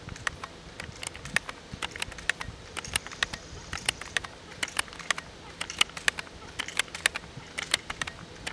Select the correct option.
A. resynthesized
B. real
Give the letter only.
B